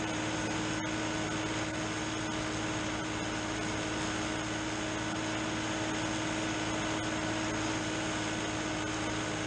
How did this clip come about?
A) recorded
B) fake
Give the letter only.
A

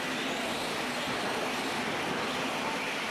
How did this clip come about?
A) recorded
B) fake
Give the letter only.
A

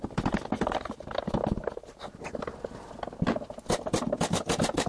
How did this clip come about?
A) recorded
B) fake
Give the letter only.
A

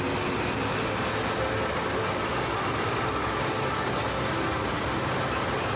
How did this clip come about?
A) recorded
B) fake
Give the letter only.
A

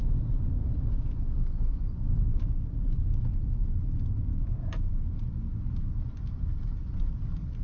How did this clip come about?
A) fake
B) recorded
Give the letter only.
B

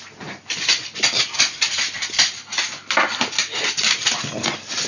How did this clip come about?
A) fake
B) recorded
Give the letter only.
B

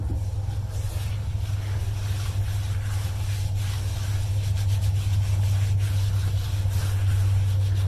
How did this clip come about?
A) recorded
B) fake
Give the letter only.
A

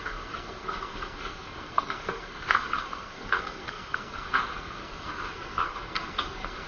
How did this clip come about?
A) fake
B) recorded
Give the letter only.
A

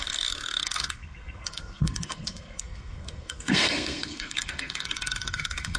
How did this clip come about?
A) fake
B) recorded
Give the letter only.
A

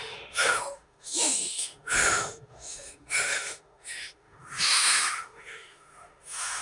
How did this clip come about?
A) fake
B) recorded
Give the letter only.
A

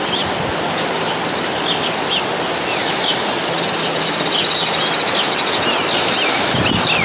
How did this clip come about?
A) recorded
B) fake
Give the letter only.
A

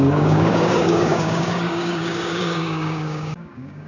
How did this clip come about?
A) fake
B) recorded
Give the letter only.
A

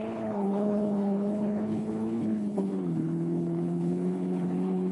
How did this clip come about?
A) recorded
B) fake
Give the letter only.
B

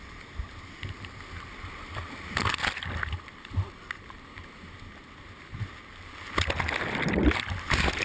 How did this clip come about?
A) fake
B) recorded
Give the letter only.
B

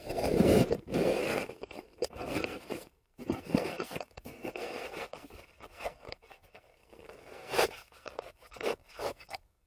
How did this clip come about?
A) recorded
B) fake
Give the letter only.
B